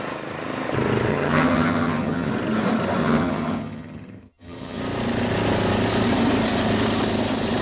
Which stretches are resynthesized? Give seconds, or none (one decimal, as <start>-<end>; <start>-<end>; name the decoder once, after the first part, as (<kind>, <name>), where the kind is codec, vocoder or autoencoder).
1.1-2.3 (vocoder, HiFi-GAN); 3.0-4.8

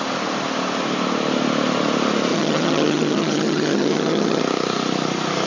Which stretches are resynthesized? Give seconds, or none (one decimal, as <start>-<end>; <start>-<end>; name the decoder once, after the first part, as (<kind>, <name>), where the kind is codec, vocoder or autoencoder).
2.3-4.4 (vocoder, HiFi-GAN)

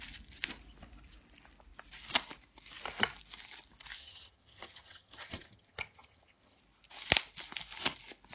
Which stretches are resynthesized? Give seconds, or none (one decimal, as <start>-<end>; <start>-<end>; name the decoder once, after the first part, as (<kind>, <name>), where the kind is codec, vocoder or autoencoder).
4.0-6.6 (vocoder, HiFi-GAN)

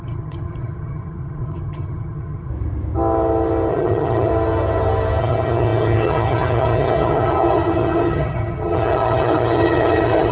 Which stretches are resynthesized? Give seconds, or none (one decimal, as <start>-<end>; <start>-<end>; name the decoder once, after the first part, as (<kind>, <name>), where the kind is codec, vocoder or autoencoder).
0.0-2.5 (vocoder, HiFi-GAN); 3.7-4.3; 5.2-10.3

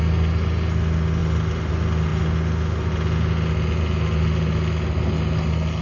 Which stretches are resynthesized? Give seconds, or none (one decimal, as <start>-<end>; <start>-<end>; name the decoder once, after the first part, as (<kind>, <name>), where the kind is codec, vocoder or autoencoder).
none